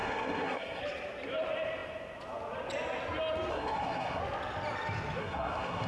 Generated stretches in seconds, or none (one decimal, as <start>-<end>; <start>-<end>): 0.0-0.8; 3.5-4.2; 5.2-5.9

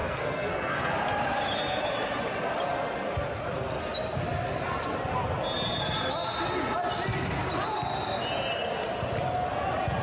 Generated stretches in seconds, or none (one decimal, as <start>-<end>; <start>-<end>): 0.0-0.9